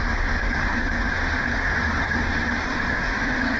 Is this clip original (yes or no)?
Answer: no